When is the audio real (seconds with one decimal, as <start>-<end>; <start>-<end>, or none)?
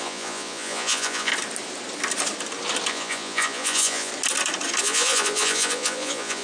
1.3-2.9; 4.1-4.8